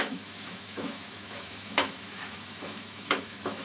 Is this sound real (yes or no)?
no